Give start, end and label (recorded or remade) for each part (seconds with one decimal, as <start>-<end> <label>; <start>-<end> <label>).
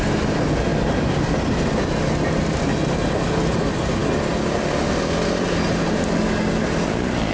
0.0-7.3 recorded